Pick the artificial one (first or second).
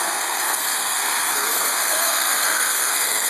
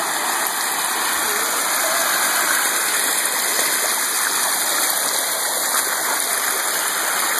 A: first